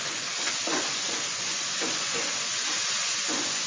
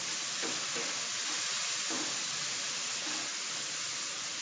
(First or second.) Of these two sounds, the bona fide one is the second